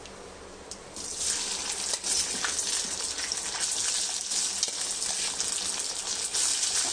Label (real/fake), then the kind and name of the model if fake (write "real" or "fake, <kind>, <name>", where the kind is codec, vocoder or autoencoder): real